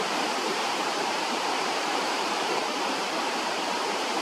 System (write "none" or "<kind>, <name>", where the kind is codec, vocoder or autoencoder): vocoder, BigVGAN v2